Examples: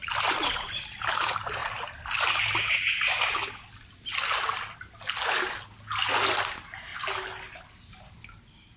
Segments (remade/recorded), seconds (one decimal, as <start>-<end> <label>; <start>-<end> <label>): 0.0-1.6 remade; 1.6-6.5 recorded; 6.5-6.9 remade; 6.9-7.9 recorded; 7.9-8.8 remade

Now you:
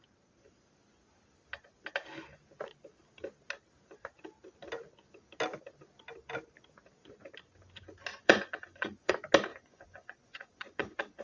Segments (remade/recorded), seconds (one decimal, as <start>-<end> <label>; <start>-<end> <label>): 0.0-8.1 recorded; 8.1-9.1 remade; 9.1-9.5 recorded; 9.5-11.2 remade

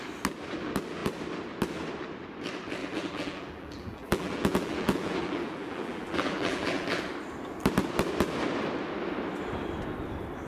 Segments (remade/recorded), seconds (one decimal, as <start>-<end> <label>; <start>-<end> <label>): 0.0-2.8 recorded; 2.8-7.0 remade; 7.0-10.5 recorded

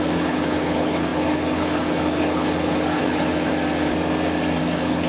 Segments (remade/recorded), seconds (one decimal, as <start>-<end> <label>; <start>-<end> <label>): 0.0-3.5 remade; 3.5-4.6 recorded; 4.6-5.1 remade

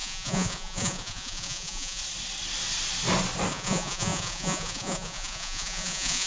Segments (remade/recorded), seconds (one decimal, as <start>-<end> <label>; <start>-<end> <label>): 0.0-2.0 remade; 2.0-3.5 recorded; 3.5-6.3 remade

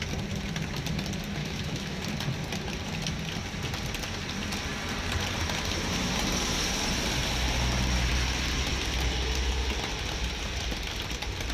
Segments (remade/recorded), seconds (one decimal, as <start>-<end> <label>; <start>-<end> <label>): 0.0-1.4 recorded; 1.4-2.0 remade; 2.0-11.5 recorded

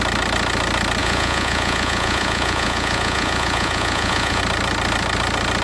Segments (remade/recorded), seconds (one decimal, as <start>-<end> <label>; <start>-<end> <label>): 0.0-1.0 recorded; 1.0-4.4 remade; 4.4-5.6 recorded

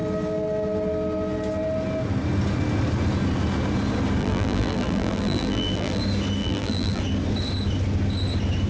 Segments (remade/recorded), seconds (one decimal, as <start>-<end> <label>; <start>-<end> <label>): 0.0-4.2 recorded; 4.2-6.0 remade; 6.0-6.4 recorded; 6.4-7.0 remade; 7.0-8.7 recorded